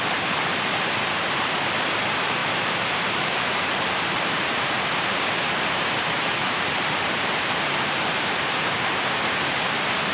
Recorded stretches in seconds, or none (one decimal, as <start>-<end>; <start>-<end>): 0.0-2.4; 7.6-10.1